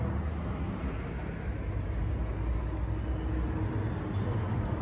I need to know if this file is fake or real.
real